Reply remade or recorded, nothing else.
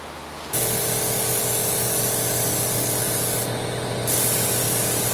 recorded